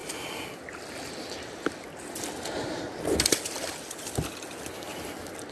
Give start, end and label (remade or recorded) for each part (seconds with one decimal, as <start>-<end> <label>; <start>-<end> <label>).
0.0-5.5 recorded